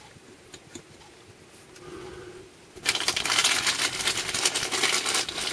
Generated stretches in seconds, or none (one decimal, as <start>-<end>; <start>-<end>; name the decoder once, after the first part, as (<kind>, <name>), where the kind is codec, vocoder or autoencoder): none